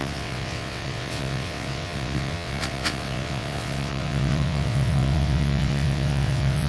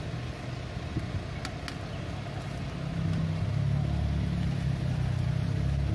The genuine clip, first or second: second